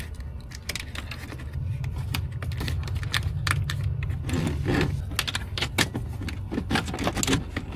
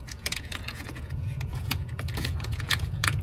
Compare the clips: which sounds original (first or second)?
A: first